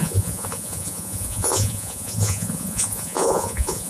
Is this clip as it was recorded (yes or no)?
no